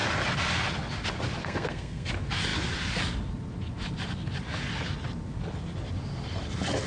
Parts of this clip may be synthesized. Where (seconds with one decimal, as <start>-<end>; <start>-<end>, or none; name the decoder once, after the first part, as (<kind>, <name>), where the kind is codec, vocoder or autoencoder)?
1.4-2.1 (codec, SNAC)